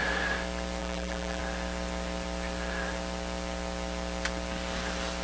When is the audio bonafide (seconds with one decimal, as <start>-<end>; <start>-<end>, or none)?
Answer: 0.0-0.8; 1.4-5.2